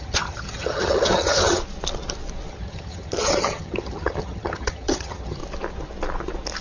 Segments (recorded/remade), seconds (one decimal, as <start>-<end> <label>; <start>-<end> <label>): 0.0-1.6 remade; 1.6-2.5 recorded; 2.5-5.4 remade; 5.4-6.6 recorded